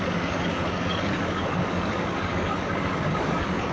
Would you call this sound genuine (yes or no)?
no